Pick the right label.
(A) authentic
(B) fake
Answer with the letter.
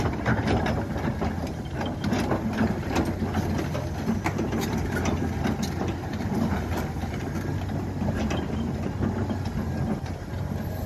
A